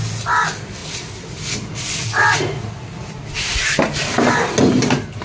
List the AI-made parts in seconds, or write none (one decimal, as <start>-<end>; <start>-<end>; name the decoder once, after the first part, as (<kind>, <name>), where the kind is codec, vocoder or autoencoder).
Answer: none